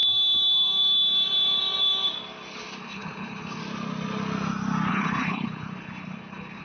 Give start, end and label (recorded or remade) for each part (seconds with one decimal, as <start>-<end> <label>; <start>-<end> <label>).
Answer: 0.0-2.8 recorded; 2.8-3.6 remade; 3.6-4.9 recorded; 4.9-6.6 remade